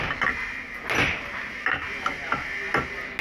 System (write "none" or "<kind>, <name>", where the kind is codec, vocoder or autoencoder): none